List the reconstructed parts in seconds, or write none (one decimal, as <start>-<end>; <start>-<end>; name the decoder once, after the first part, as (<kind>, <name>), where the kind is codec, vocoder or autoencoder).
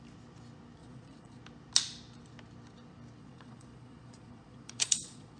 0.8-1.4 (vocoder, Vocos); 3.2-5.4